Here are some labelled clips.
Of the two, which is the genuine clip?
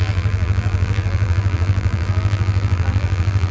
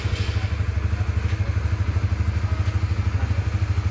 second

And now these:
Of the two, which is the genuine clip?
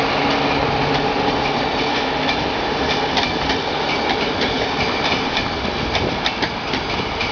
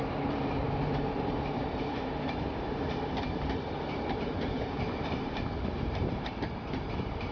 first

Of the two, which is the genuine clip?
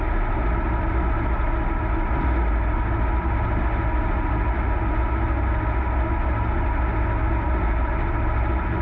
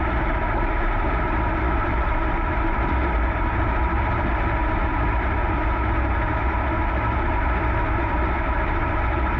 first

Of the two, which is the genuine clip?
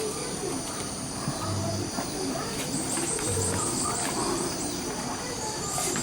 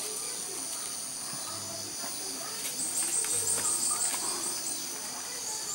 second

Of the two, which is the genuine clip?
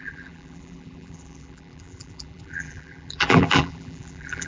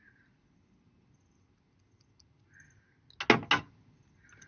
second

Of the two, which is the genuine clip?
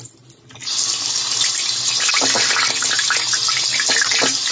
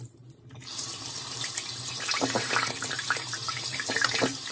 first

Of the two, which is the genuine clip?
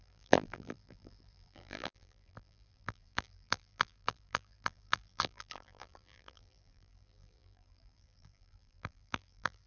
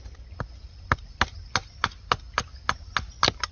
second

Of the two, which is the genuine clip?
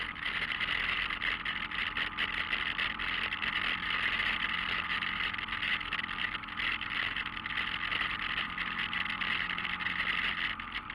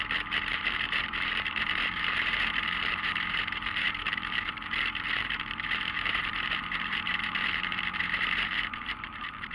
first